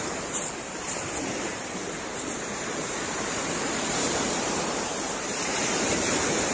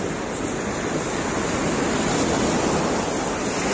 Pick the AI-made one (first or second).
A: first